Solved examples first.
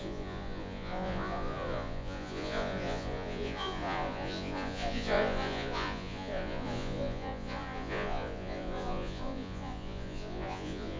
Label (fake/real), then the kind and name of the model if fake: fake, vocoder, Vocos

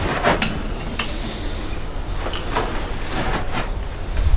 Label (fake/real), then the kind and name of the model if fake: real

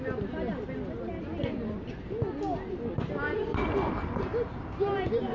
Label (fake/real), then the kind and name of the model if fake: real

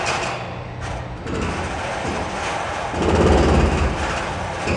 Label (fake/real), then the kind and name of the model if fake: real